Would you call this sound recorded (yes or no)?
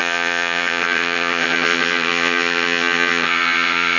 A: no